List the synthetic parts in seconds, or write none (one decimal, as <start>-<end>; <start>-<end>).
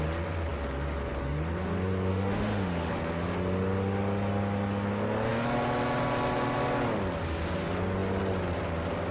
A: 2.1-2.9